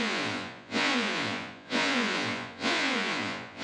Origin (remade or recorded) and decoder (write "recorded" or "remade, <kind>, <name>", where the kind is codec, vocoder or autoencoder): remade, vocoder, Vocos